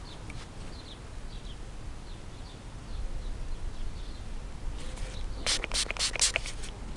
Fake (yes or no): no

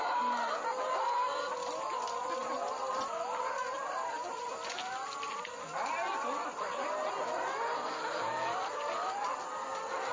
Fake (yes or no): no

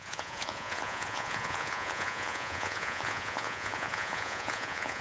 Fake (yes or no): yes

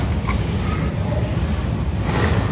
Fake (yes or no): no